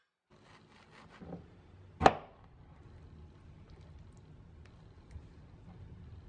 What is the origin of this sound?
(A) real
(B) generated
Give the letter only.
A